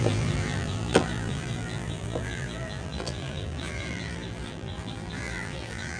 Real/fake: fake